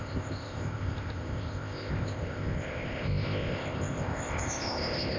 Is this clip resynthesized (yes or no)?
yes